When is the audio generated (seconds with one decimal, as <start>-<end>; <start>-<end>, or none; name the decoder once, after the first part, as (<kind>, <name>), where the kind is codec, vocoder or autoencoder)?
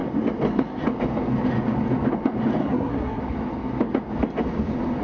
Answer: 2.6-3.2 (codec, SNAC)